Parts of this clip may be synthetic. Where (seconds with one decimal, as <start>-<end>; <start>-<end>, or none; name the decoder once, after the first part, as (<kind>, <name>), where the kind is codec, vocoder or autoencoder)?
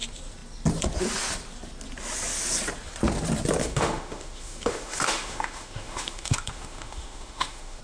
3.6-7.8 (autoencoder, DAC-VAE)